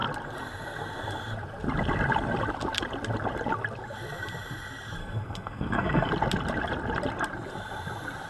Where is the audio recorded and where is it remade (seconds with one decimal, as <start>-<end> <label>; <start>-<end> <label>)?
0.0-5.0 recorded; 5.0-6.1 remade; 6.1-8.3 recorded